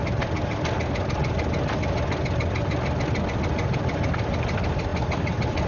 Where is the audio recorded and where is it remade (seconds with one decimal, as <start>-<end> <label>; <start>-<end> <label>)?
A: 0.0-5.7 recorded